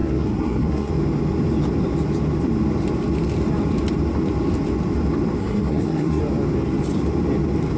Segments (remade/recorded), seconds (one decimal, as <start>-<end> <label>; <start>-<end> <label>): 0.0-0.9 remade; 0.9-5.4 recorded; 5.4-6.2 remade; 6.2-7.8 recorded